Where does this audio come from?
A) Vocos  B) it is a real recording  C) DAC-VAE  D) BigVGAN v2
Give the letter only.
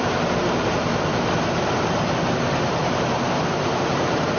D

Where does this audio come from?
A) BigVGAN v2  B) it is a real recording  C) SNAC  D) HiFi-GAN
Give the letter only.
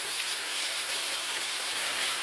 C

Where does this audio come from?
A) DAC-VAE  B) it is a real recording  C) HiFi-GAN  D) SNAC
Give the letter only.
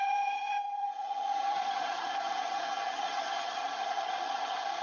C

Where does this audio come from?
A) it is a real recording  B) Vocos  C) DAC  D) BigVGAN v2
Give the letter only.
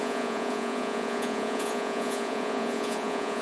B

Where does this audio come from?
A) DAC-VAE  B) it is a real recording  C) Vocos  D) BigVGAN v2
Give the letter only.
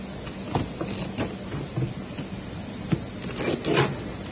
B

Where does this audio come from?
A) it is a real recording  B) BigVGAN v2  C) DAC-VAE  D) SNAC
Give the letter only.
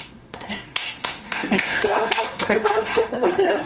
D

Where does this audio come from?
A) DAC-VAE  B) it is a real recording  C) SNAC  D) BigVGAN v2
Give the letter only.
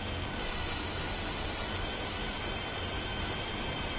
D